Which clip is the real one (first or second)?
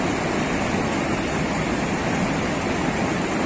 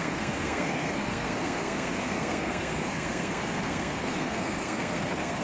first